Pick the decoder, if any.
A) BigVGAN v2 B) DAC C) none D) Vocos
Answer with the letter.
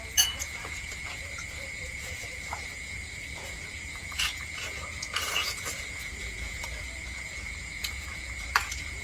D